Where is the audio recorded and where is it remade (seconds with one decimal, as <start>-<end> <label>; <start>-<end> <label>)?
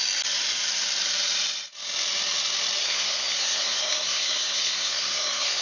0.0-2.8 recorded; 2.8-5.6 remade